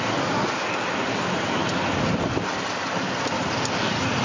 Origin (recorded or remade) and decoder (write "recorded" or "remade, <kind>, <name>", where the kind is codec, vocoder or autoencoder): recorded